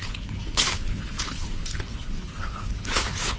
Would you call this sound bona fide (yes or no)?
no